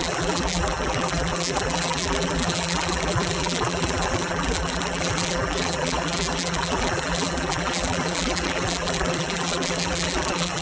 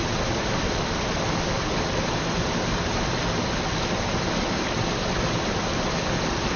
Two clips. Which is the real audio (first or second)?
second